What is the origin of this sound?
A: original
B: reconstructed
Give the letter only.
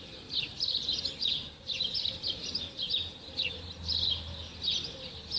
A